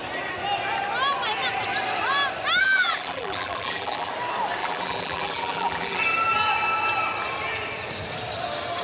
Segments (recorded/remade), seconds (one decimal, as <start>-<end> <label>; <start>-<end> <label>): 0.0-2.6 recorded; 2.6-4.1 remade; 4.1-4.6 recorded; 4.6-6.0 remade; 6.0-8.8 recorded